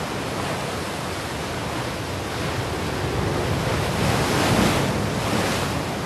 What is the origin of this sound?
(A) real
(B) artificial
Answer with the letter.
A